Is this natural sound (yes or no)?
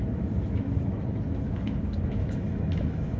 no